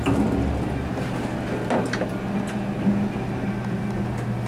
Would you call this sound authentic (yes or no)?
yes